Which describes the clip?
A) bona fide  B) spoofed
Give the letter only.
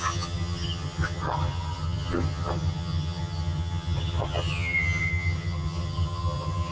B